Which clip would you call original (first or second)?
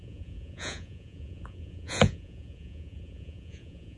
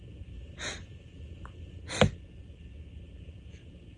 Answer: second